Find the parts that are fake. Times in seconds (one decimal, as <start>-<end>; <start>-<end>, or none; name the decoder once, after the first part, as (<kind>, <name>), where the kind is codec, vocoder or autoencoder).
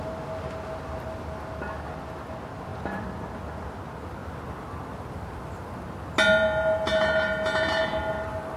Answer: none